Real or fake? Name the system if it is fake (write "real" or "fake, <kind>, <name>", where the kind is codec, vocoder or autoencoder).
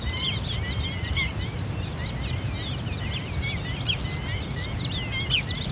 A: real